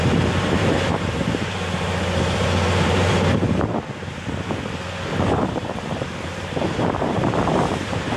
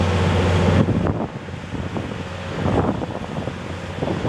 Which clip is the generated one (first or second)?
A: first